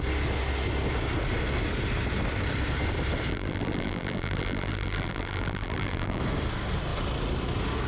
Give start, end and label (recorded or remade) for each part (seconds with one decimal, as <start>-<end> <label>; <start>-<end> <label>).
0.0-3.3 recorded; 3.3-6.2 remade; 6.2-7.9 recorded